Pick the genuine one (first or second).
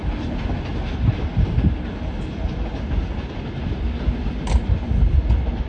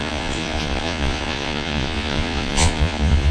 first